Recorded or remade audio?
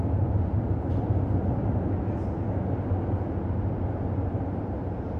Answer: recorded